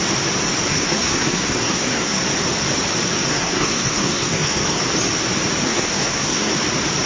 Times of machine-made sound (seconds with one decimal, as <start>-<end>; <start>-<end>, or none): 0.7-2.2; 3.3-4.8; 5.7-6.5

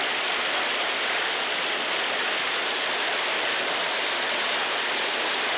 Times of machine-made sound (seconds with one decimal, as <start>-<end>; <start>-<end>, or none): none

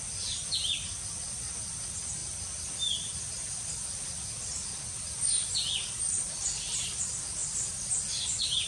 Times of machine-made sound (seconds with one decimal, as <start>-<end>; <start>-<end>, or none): none

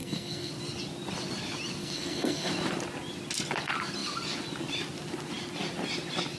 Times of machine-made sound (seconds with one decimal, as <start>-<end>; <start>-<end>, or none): 0.0-0.5; 1.8-2.5

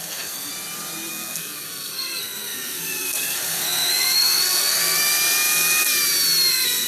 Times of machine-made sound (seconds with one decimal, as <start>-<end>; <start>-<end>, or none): 0.0-0.5; 1.1-5.1; 6.5-6.9